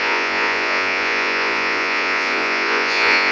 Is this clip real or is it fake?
fake